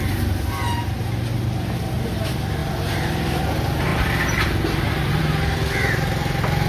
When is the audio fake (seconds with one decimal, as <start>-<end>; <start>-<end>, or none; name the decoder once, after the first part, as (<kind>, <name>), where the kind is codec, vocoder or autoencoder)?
none